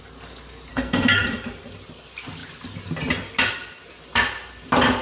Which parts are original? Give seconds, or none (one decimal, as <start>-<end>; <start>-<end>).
0.0-0.7; 1.3-5.0